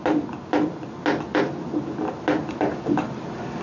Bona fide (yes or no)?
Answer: yes